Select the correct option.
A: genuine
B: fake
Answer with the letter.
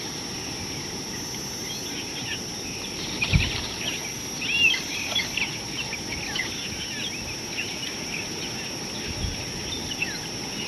A